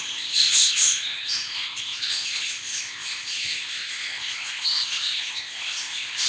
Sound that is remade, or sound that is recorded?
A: remade